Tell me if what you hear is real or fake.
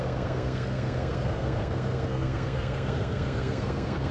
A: fake